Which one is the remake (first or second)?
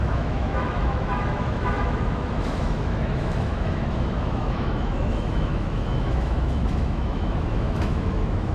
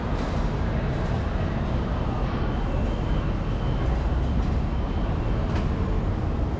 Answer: first